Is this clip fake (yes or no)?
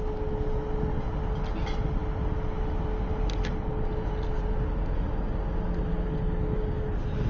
no